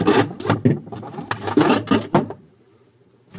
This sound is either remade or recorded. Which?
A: recorded